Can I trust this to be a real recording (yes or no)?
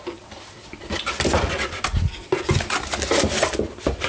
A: yes